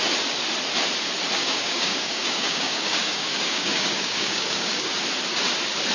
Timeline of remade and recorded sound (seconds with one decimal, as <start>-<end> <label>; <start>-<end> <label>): 0.0-1.4 recorded; 1.4-4.9 remade; 4.9-5.9 recorded